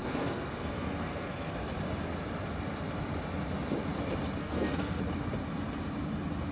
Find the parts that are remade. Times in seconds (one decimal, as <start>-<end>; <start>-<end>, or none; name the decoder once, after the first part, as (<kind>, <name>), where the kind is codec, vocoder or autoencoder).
0.0-1.5 (codec, SNAC); 4.4-5.0